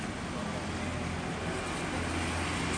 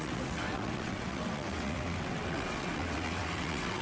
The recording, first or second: first